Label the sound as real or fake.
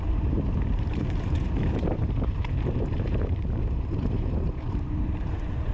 fake